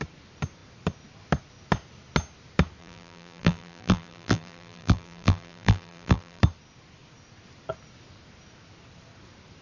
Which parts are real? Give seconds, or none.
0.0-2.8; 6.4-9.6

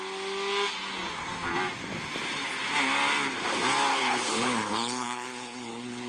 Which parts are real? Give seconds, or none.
0.0-3.9

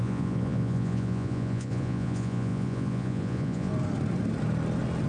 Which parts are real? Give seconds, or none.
3.7-5.1

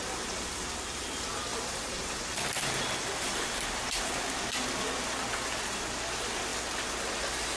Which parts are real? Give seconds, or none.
0.0-1.5; 4.3-7.6

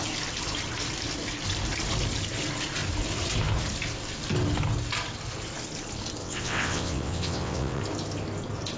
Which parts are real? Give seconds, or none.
0.0-6.2; 7.8-8.8

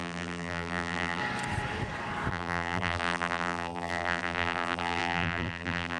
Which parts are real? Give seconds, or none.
1.2-2.3

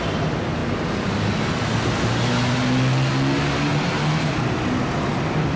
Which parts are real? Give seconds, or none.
0.0-5.6